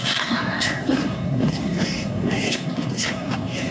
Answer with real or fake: fake